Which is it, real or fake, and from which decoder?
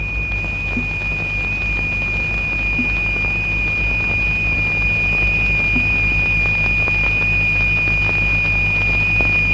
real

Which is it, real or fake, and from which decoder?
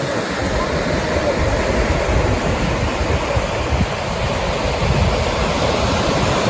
real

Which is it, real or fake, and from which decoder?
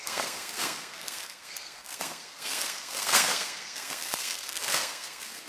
fake, codec, SNAC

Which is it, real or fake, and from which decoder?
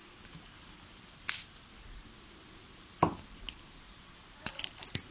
real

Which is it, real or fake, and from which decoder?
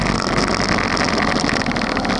real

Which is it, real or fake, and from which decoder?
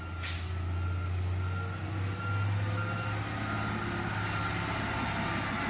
real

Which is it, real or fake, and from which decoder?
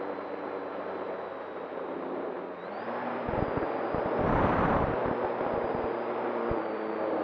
fake, vocoder, BigVGAN v2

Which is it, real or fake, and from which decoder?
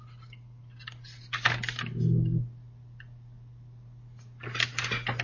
real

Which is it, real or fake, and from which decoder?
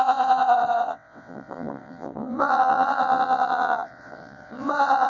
fake, vocoder, WaveNeXt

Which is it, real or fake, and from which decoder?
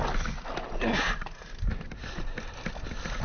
real